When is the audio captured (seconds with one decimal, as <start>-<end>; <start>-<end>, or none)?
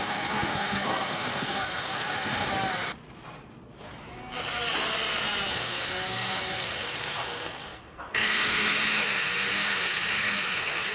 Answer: 2.5-5.5